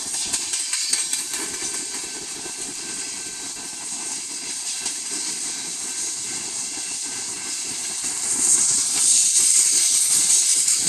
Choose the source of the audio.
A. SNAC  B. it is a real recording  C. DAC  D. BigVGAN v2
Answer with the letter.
D